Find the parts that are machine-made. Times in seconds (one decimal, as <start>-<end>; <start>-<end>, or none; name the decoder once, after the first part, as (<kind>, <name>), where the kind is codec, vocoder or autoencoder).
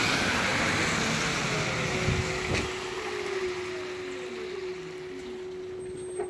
none